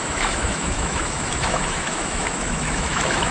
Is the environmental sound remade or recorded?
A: remade